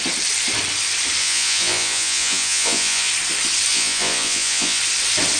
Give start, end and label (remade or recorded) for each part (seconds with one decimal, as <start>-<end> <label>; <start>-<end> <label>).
0.0-1.2 recorded; 1.2-3.1 remade; 3.1-3.7 recorded; 3.7-4.8 remade; 4.8-5.4 recorded